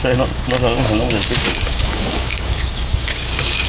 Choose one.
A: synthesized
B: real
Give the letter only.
A